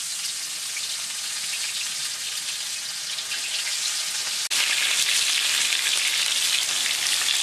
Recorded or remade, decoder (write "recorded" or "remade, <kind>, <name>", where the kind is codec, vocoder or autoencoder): recorded